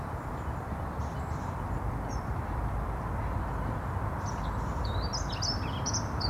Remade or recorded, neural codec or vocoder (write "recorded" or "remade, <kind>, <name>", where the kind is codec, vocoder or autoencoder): remade, vocoder, BigVGAN v2